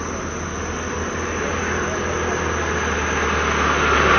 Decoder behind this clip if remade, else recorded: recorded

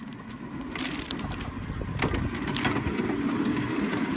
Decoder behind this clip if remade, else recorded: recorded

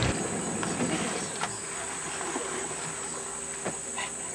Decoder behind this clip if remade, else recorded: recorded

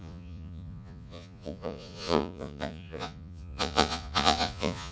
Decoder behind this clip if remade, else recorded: remade, vocoder, Vocos